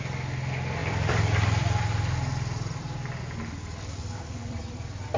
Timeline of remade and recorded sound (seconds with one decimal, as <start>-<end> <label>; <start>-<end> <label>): 0.0-0.8 recorded; 0.8-3.2 remade; 3.2-4.0 recorded; 4.0-4.6 remade; 4.6-5.2 recorded